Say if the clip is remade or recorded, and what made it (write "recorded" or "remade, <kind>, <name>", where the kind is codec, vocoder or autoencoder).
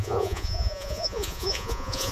remade, vocoder, Vocos